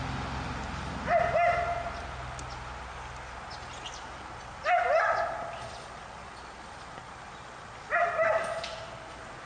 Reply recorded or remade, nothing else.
recorded